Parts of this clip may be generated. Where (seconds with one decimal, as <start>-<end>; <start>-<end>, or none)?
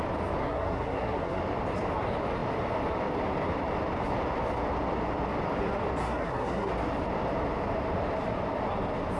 0.4-1.4; 6.0-6.7